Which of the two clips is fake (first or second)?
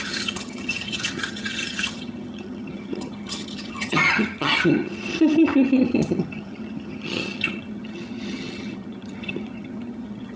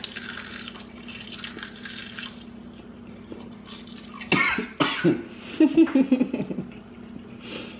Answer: first